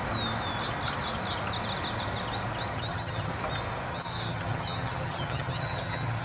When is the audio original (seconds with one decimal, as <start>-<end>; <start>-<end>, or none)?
0.0-2.7; 3.3-3.9